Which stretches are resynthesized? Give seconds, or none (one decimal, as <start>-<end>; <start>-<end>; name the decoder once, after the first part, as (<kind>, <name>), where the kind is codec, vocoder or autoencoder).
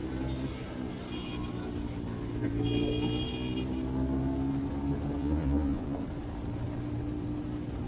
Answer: 5.2-6.0 (vocoder, Vocos)